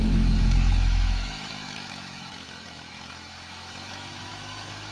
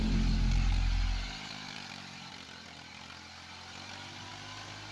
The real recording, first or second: second